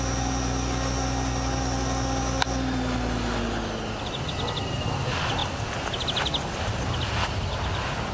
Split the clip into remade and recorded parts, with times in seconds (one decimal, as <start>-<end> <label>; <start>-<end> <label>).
0.0-8.1 recorded